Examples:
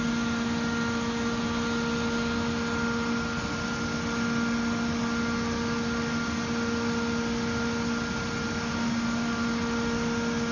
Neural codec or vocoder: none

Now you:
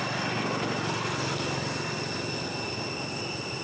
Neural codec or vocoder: none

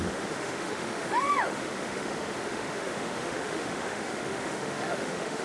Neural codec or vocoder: autoencoder, DAC-VAE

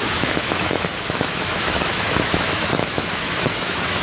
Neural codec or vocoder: autoencoder, DAC-VAE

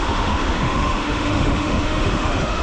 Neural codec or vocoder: autoencoder, DAC-VAE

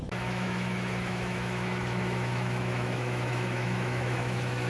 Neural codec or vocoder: autoencoder, DAC-VAE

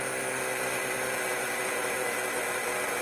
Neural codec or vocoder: none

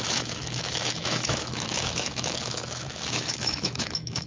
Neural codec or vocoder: autoencoder, DAC-VAE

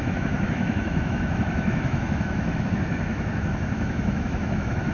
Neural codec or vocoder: autoencoder, DAC-VAE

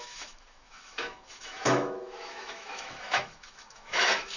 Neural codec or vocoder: autoencoder, DAC-VAE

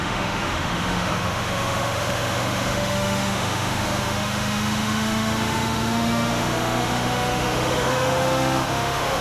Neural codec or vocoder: autoencoder, DAC-VAE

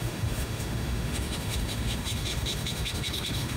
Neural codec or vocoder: autoencoder, DAC-VAE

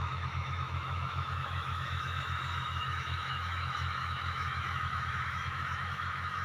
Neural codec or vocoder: autoencoder, DAC-VAE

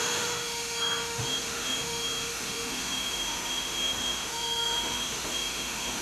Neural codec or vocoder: autoencoder, DAC-VAE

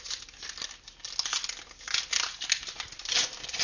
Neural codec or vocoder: none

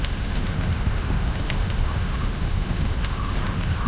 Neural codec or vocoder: autoencoder, DAC-VAE